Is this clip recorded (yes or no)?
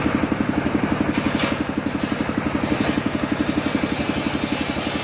yes